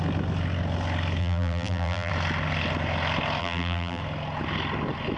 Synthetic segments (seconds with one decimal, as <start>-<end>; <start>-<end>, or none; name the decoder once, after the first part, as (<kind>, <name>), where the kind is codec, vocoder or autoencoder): 1.2-2.1 (vocoder, BigVGAN v2); 3.4-4.0